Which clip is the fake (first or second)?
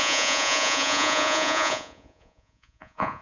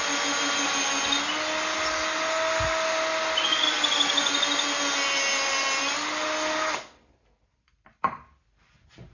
first